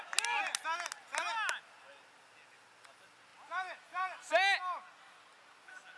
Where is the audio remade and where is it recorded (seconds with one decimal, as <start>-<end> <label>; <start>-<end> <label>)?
0.0-6.0 recorded